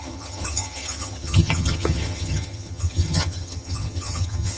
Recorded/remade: remade